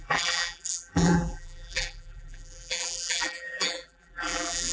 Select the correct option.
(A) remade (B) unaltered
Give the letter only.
A